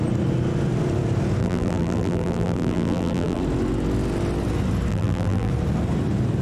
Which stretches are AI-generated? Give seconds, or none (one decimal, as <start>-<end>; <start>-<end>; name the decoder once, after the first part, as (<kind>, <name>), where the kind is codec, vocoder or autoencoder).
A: 1.4-3.4 (vocoder, BigVGAN v2); 4.9-5.5